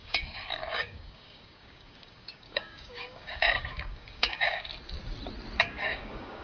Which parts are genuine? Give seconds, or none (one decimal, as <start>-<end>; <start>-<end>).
4.7-5.6